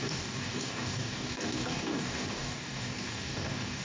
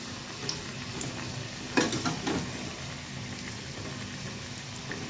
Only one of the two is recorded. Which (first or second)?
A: second